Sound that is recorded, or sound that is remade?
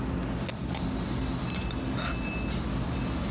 recorded